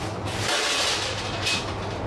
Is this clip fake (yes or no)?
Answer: no